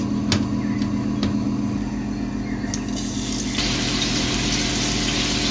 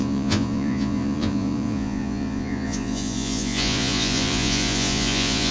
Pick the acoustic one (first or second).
first